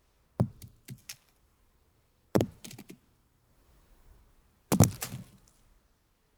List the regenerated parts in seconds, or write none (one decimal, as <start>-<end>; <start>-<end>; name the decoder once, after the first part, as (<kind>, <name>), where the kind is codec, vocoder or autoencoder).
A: 1.0-4.2 (vocoder, BigVGAN v2)